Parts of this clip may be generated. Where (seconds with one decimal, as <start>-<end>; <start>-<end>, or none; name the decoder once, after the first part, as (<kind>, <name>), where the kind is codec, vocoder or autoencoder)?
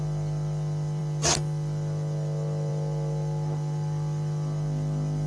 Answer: none